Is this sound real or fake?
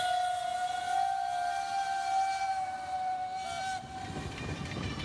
real